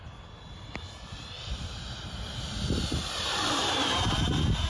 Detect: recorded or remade recorded